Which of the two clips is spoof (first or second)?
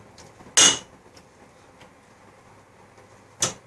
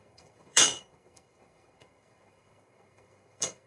second